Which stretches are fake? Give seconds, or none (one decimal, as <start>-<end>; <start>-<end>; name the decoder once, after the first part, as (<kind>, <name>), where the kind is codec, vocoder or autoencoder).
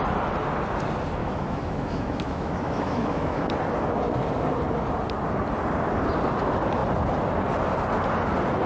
1.2-3.5 (autoencoder, DAC-VAE)